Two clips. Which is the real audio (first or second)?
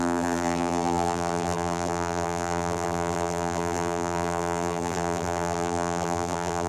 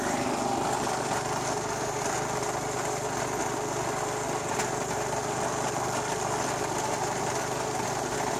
second